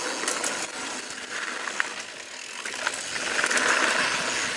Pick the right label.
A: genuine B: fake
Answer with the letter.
A